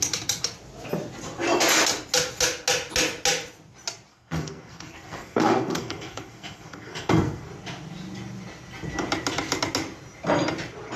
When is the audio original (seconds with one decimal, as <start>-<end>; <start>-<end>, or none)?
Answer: 0.0-4.1; 7.5-11.0